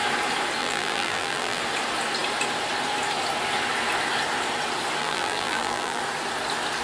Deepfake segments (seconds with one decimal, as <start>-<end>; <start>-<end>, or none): 0.6-1.6; 5.0-6.0